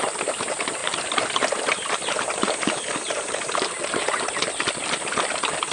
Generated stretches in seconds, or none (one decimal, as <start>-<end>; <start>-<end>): 0.8-4.2